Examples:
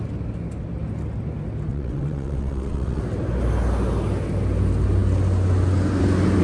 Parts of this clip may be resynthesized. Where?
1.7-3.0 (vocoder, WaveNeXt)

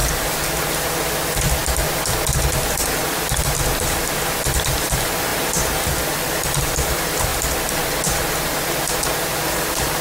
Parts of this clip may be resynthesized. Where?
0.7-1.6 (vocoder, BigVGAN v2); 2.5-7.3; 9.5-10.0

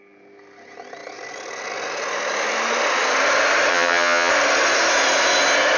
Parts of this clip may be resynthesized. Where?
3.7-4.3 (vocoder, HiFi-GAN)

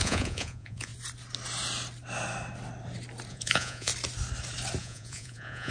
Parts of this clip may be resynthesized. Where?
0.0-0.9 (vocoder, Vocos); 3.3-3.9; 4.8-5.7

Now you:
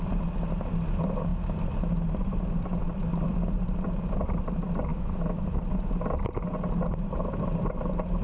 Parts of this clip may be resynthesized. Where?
4.9-5.6 (autoencoder, DAC-VAE)